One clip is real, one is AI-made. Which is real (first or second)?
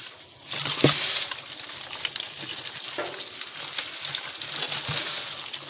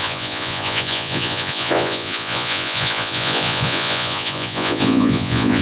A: first